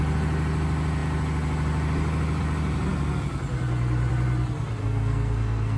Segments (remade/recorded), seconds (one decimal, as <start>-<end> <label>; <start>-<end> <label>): 0.0-4.8 recorded; 4.8-5.8 remade